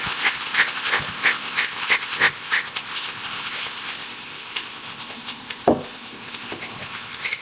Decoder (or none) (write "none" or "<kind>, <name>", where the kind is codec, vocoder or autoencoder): codec, ZipCodec